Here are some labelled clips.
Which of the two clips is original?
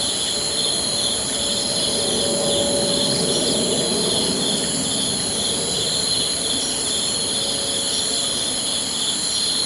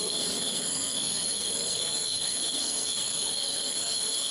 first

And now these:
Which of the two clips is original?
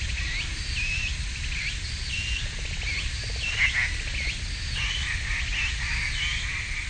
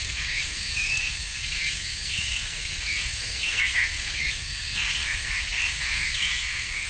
first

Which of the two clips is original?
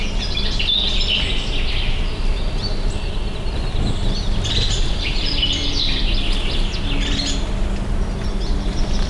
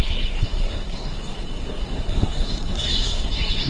first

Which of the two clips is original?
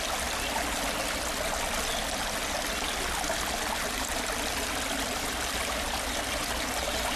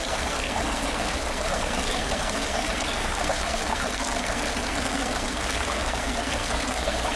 first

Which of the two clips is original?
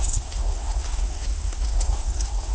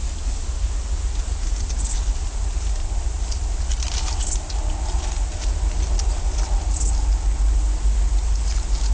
second